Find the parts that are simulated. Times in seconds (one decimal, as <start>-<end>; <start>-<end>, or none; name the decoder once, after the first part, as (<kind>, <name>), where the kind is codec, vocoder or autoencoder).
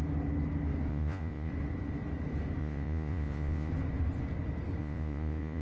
0.9-1.5 (vocoder, Vocos); 2.6-3.7; 4.8-5.6